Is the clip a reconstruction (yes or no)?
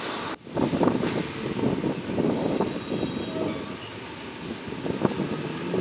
no